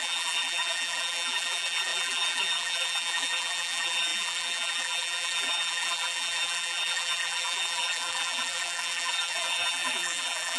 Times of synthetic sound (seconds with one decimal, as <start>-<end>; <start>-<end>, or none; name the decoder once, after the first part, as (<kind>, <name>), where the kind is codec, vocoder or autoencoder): 0.0-10.6 (vocoder, BigVGAN v2)